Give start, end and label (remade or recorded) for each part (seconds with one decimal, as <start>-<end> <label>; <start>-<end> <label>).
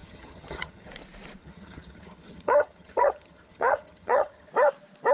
0.0-0.9 remade; 0.9-1.4 recorded; 1.4-4.5 remade; 4.5-5.1 recorded